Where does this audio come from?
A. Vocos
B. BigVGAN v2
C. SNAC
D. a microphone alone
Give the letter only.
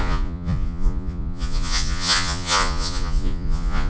A